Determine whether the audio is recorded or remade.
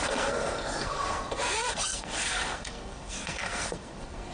remade